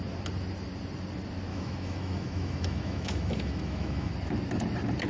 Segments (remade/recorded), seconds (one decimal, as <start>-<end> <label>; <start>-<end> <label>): 0.0-1.5 recorded; 1.5-4.1 remade; 4.1-5.1 recorded